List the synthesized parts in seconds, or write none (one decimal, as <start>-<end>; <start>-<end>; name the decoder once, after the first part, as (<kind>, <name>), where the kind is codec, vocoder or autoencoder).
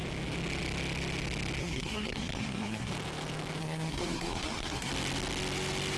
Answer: 1.6-2.9 (codec, SNAC); 3.6-4.9